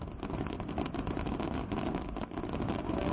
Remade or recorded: recorded